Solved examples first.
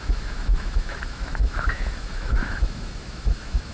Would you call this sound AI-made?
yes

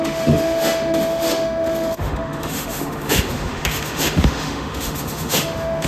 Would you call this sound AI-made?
yes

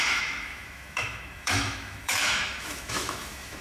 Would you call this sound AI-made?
yes